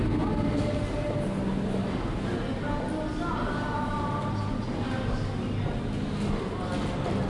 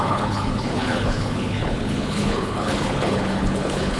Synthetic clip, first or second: second